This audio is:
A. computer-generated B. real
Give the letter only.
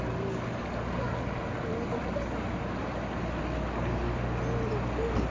B